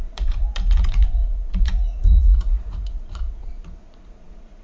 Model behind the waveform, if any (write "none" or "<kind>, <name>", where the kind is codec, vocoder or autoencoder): vocoder, Vocos